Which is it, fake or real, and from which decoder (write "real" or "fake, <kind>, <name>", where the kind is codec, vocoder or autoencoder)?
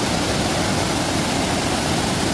real